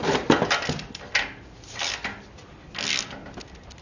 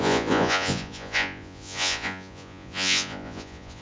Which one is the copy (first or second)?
second